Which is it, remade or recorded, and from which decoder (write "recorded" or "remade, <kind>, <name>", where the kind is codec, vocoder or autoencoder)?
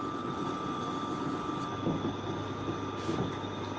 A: recorded